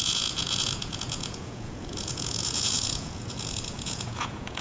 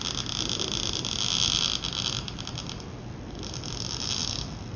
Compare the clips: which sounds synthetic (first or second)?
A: first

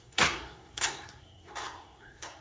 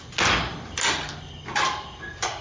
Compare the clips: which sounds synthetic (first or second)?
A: first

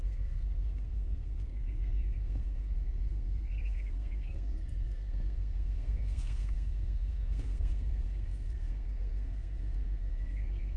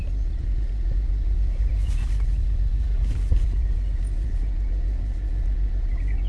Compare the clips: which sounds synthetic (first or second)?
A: first